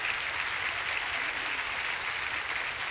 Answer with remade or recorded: remade